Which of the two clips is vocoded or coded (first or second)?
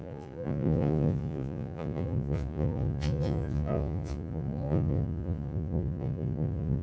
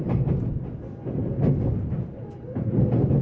first